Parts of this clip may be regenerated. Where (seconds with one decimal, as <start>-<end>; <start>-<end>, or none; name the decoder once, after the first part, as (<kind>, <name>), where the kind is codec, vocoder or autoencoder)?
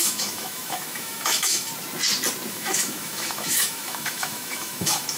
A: 0.0-1.7 (autoencoder, DAC-VAE); 2.5-5.2